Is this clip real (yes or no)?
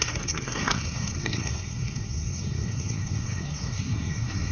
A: no